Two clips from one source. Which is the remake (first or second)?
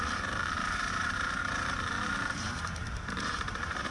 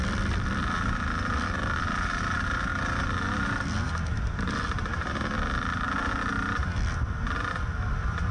first